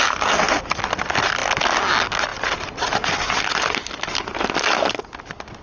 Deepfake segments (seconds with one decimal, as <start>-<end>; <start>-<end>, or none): none